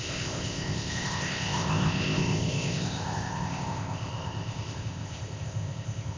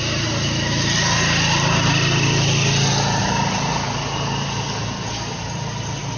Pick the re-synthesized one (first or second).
first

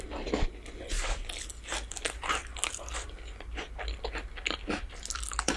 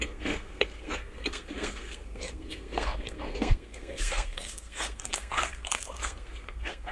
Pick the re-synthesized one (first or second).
second